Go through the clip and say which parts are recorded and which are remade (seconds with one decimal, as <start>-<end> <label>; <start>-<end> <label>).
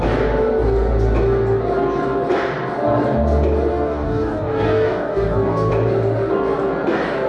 0.0-3.7 recorded; 3.7-5.7 remade; 5.7-7.3 recorded